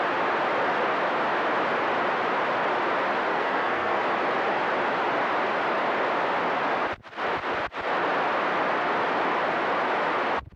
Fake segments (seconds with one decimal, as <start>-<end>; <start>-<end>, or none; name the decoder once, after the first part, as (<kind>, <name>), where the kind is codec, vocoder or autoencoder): 3.3-4.0 (codec, SNAC)